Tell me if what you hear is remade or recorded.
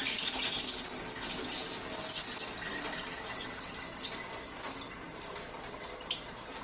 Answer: recorded